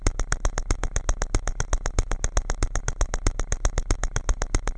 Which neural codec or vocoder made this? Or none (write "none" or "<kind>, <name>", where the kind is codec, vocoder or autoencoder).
codec, HILCodec